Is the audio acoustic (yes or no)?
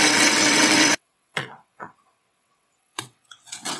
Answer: no